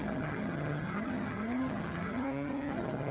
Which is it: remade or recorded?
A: remade